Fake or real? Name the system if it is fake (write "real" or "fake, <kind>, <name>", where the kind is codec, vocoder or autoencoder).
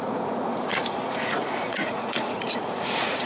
fake, vocoder, Vocos